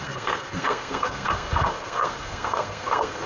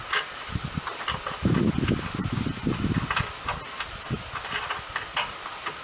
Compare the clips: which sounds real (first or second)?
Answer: second